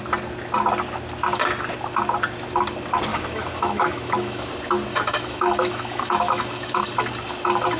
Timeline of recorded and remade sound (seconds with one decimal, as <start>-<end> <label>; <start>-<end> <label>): 0.0-3.1 recorded; 3.1-4.5 remade; 4.5-4.9 recorded; 4.9-6.8 remade; 6.8-7.8 recorded